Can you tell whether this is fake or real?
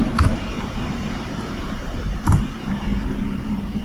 fake